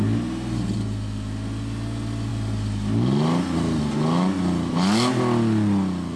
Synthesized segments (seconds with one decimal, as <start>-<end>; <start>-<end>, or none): none